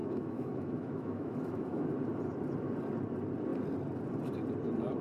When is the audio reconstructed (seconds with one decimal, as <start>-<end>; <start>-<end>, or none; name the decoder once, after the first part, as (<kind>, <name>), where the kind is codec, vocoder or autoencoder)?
0.0-1.9 (autoencoder, DAC-VAE)